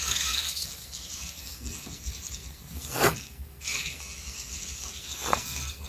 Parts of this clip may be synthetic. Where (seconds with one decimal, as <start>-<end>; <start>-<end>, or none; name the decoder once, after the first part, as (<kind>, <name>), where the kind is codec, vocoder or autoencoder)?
0.0-5.9 (codec, SNAC)